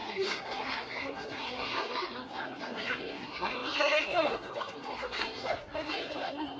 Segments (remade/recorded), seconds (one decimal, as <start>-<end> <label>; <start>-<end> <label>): 0.0-6.6 remade